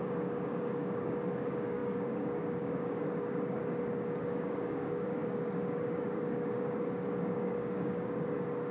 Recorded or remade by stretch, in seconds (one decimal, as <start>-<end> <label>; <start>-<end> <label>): 0.0-8.7 remade

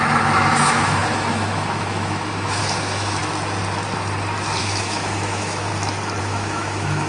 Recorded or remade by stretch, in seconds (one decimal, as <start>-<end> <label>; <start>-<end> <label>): 0.0-3.2 remade; 3.2-4.6 recorded; 4.6-5.7 remade; 5.7-6.2 recorded; 6.2-7.1 remade

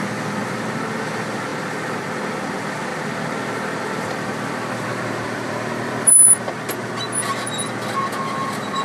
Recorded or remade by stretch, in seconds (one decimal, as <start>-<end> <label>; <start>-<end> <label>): 0.0-0.4 recorded; 0.4-1.0 remade; 1.0-1.5 recorded; 1.5-2.5 remade; 2.5-2.9 recorded; 2.9-6.7 remade; 6.7-8.8 recorded

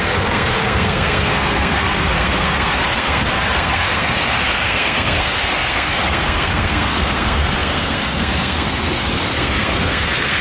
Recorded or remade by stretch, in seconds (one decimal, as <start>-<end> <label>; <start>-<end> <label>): 0.0-10.4 remade

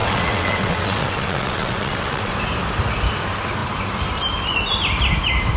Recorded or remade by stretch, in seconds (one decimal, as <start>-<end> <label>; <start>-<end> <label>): 0.0-2.3 remade; 2.3-5.6 recorded

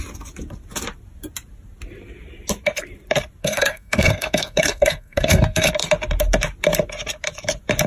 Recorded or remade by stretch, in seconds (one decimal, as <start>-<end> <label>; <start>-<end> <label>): 0.0-3.4 recorded; 3.4-5.7 remade; 5.7-7.9 recorded

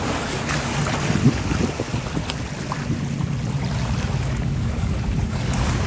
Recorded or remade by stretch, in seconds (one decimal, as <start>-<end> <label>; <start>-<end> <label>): 0.0-0.7 remade; 0.7-4.2 recorded; 4.2-5.9 remade